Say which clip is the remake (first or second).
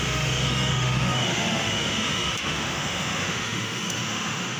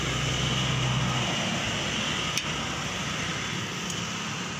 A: first